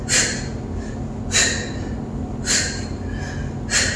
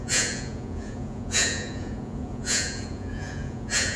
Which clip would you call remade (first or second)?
second